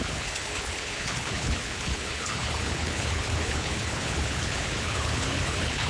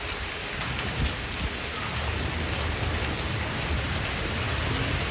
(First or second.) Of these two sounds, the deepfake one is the first